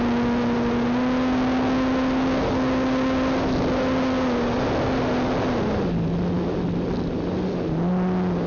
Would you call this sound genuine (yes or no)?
yes